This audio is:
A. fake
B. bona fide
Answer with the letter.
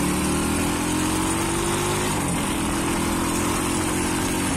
B